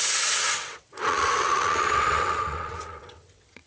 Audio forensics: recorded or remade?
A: remade